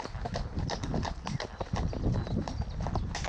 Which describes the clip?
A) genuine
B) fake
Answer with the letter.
A